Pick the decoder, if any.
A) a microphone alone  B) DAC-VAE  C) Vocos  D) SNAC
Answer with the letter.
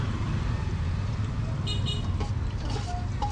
A